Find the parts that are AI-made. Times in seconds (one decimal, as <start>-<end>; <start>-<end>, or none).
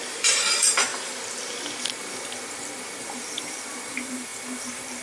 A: 0.0-0.9; 3.0-5.0